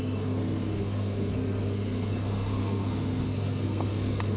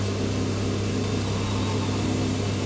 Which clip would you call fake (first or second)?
first